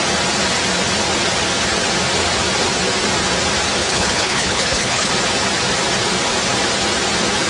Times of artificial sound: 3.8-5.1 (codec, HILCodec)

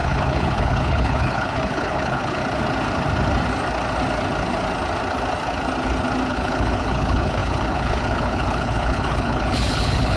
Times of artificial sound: 0.0-2.4 (codec, HILCodec); 6.3-10.2

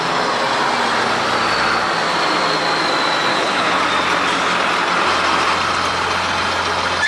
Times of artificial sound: 3.3-3.8 (codec, HILCodec)

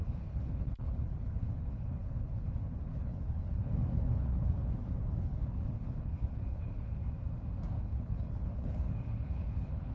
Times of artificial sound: 0.0-7.0 (codec, HILCodec); 7.8-9.9

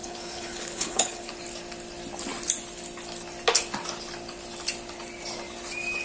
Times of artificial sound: 0.0-1.3 (codec, HILCodec)

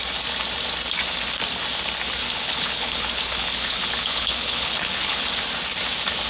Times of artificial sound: 2.2-5.3 (codec, HILCodec)